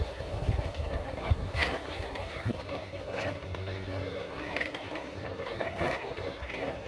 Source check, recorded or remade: remade